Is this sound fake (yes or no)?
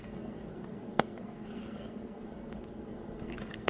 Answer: yes